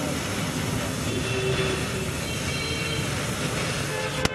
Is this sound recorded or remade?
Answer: recorded